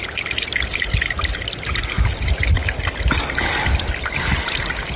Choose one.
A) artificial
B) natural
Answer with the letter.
B